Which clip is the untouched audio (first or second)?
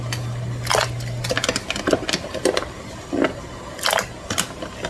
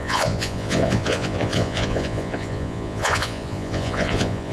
first